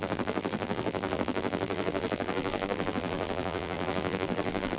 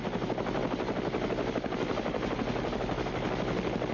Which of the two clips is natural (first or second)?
second